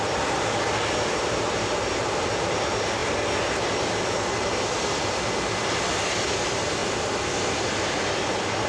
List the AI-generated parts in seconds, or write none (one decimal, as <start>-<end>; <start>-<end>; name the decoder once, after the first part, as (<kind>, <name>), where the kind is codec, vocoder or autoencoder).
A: none

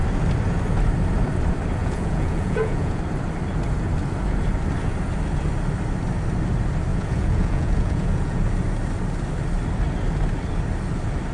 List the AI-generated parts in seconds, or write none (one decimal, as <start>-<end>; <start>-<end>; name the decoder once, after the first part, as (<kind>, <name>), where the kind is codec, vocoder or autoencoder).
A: 1.8-3.0 (vocoder, Vocos); 6.9-8.4

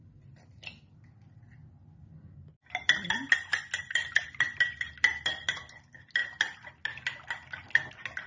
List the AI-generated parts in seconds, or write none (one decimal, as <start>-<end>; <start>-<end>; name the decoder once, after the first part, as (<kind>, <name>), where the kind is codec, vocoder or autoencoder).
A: none

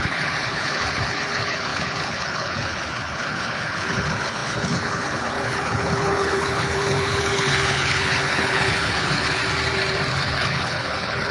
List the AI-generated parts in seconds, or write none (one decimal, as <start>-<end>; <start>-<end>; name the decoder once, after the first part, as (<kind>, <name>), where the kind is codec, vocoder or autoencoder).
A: 0.0-9.4 (codec, HILCodec); 10.1-11.3